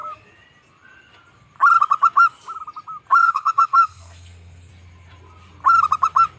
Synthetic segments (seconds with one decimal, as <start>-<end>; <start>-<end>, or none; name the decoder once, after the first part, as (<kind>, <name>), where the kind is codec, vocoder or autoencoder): 3.2-4.7 (codec, SNAC)